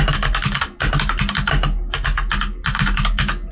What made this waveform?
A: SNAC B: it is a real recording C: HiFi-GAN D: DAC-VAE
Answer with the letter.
B